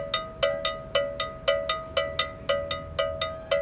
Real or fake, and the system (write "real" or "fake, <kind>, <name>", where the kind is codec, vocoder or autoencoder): real